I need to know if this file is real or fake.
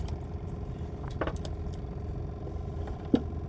real